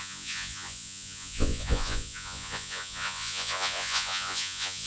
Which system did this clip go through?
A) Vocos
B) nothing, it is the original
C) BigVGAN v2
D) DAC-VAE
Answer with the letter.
A